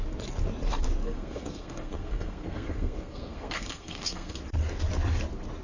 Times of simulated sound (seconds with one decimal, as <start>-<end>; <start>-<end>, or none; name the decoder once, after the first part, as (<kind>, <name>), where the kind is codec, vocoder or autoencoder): 1.0-4.4 (codec, SNAC)